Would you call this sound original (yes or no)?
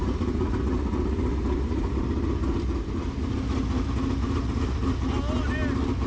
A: yes